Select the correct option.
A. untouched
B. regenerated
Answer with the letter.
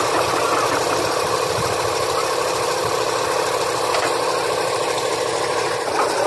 A